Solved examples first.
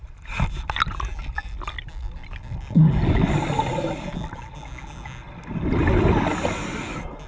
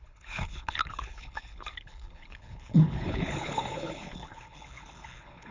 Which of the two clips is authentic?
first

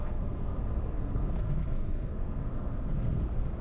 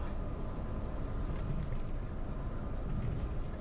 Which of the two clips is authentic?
second